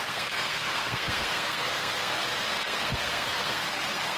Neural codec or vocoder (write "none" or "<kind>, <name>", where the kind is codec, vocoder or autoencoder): codec, SNAC